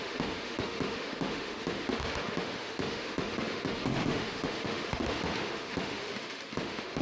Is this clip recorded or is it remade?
remade